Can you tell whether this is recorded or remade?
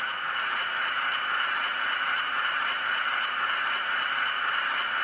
remade